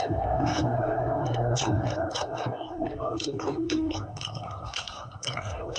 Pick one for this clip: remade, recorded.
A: remade